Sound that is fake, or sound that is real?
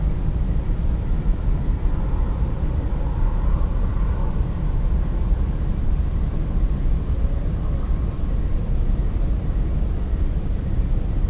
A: real